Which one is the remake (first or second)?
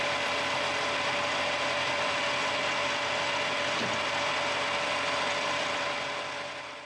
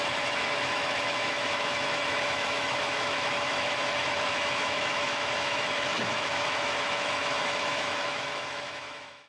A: second